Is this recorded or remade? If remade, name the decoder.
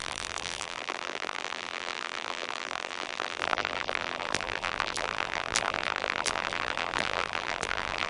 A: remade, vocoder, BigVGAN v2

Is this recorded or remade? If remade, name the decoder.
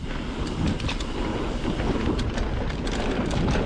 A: recorded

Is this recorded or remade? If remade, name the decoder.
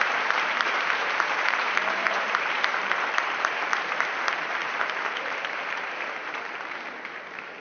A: remade, vocoder, BigVGAN v2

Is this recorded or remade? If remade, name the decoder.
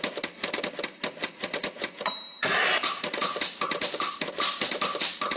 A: remade, vocoder, BigVGAN v2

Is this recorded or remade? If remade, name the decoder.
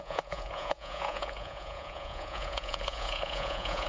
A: remade, vocoder, Vocos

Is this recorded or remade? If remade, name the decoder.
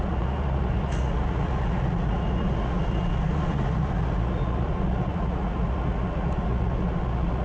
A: remade, vocoder, Vocos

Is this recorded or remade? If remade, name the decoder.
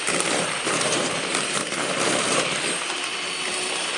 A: remade, vocoder, BigVGAN v2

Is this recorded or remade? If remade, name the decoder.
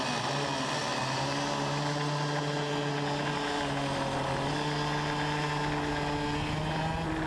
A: recorded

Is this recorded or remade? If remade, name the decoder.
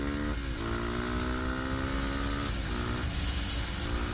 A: recorded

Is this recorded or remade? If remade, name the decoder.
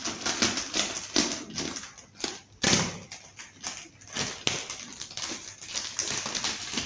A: recorded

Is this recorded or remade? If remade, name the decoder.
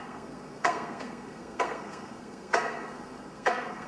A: remade, codec, SNAC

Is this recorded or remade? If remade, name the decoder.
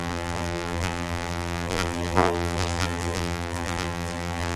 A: remade, vocoder, BigVGAN v2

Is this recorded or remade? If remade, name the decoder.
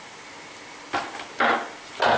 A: recorded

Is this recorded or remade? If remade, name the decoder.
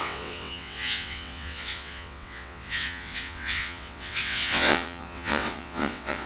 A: remade, vocoder, WaveNeXt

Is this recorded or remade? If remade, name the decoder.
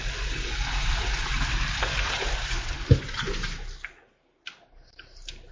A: recorded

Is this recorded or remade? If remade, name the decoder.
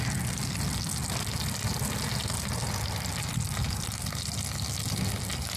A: recorded